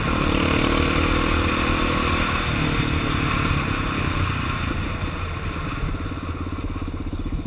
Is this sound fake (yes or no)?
no